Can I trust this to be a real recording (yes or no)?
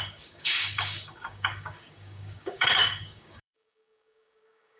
no